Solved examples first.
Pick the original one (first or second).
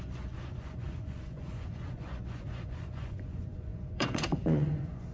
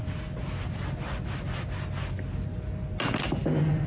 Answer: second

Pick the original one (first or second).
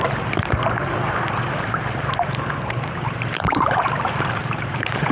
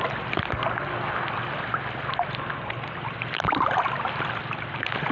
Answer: second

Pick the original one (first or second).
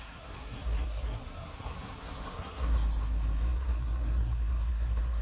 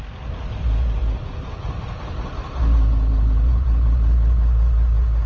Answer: second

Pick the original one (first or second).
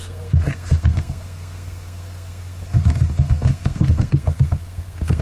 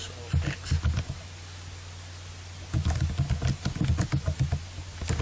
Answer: second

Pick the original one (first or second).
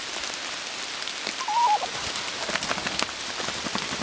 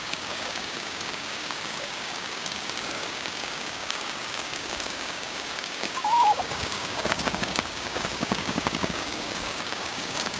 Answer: first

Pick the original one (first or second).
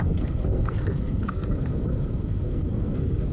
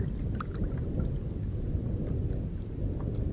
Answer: second